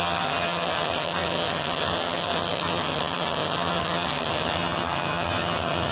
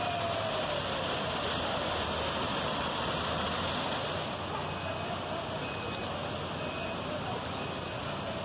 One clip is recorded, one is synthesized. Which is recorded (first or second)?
second